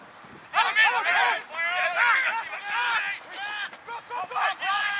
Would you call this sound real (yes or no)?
yes